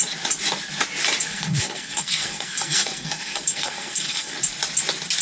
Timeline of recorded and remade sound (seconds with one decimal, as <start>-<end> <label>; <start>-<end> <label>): 0.0-1.2 recorded; 1.2-4.3 remade; 4.3-5.2 recorded